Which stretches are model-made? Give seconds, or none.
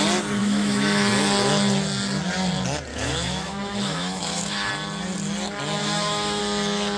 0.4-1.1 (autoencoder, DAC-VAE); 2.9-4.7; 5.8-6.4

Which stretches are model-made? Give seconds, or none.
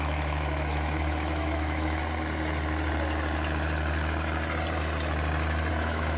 0.0-2.0 (autoencoder, DAC-VAE); 5.7-6.2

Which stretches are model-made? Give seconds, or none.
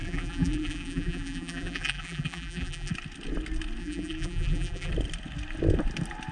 0.0-2.9 (vocoder, BigVGAN v2); 3.8-4.9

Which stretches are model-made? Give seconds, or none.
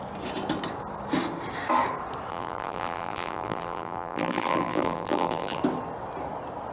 2.3-5.6 (vocoder, BigVGAN v2)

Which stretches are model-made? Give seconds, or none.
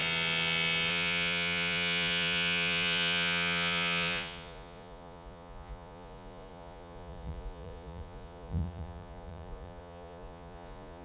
0.9-11.0 (vocoder, Vocos)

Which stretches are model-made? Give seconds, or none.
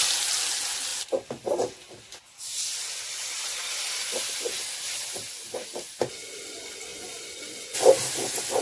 6.9-7.8 (vocoder, Vocos)